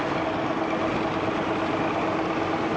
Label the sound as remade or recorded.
recorded